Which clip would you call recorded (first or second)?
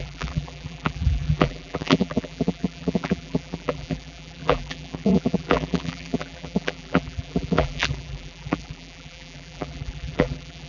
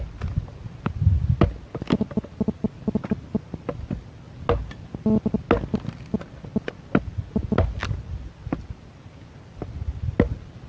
second